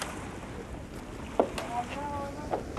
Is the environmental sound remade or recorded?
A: recorded